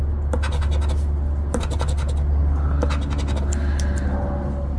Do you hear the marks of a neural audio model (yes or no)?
no